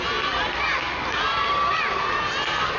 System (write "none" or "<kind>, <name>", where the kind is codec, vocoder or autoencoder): none